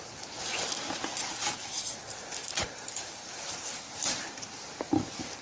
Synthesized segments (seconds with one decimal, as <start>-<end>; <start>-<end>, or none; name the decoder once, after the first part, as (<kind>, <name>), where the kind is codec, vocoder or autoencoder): 2.3-4.7 (vocoder, BigVGAN v2)